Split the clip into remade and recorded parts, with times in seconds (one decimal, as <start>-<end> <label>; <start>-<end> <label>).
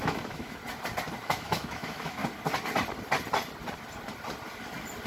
0.0-0.6 remade; 0.6-1.2 recorded; 1.2-2.2 remade; 2.2-5.1 recorded